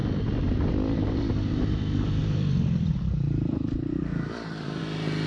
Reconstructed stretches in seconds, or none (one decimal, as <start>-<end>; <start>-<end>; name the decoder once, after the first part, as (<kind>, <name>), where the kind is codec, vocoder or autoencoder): 0.7-5.3 (vocoder, BigVGAN v2)